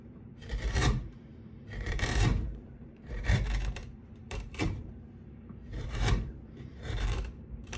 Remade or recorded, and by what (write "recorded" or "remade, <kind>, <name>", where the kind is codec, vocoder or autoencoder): remade, vocoder, BigVGAN v2